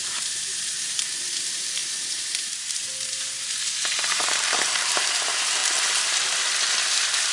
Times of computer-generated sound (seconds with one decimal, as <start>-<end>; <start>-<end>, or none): 0.0-5.6